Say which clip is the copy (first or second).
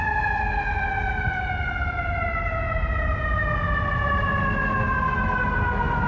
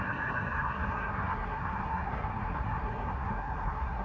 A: second